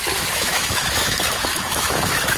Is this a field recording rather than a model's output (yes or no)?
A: no